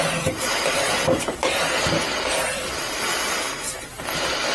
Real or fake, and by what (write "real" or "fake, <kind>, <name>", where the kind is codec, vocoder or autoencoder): real